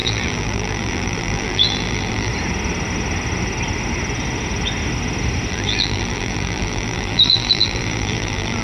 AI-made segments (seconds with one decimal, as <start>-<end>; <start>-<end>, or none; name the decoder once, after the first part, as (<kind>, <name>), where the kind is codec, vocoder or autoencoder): 0.0-2.3 (vocoder, BigVGAN v2); 5.5-8.6